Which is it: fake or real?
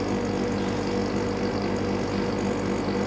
real